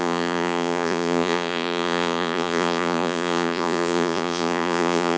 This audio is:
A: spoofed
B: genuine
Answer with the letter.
A